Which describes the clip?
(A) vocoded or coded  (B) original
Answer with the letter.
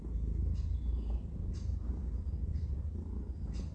B